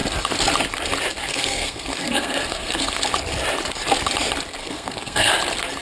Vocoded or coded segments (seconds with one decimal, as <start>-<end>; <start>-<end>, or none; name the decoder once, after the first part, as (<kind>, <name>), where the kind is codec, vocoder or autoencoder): 1.3-2.9 (codec, SNAC); 4.6-5.3